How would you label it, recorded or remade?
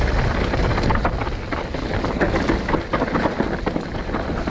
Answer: recorded